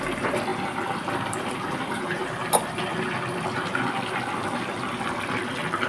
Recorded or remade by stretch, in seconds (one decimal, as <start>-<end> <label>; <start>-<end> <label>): 0.0-0.5 remade; 0.5-1.1 recorded; 1.1-2.2 remade; 2.2-5.9 recorded